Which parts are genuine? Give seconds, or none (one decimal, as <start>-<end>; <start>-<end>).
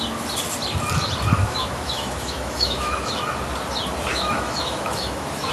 0.0-1.3; 3.2-4.1